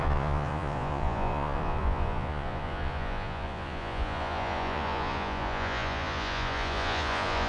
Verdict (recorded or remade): remade